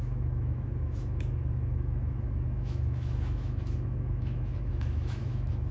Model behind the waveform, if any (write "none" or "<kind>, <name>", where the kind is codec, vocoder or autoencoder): autoencoder, DAC-VAE